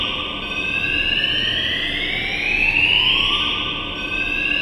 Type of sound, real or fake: real